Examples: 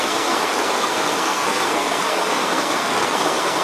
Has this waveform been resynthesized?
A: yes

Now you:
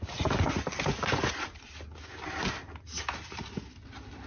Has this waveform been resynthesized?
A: no